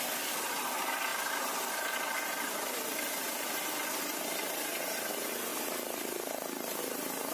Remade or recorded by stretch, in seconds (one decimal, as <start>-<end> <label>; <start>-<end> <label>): 0.0-1.1 recorded; 1.1-5.1 remade; 5.1-5.5 recorded; 5.5-6.8 remade; 6.8-7.3 recorded